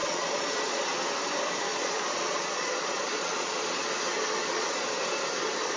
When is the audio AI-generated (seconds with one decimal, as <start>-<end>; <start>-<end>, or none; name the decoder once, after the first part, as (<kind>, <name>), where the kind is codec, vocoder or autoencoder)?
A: 0.0-1.0 (vocoder, Vocos); 1.7-3.9; 4.4-5.0